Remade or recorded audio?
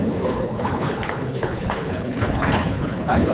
remade